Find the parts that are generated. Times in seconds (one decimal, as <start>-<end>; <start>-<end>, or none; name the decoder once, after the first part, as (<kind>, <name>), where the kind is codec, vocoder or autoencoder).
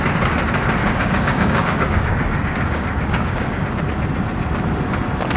0.8-3.8 (codec, DAC)